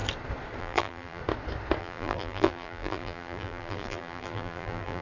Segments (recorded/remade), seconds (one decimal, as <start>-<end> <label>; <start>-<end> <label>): 0.0-0.6 recorded; 0.6-1.2 remade; 1.2-1.8 recorded; 1.8-5.0 remade